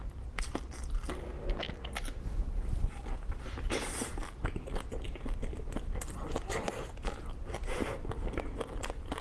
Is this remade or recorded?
recorded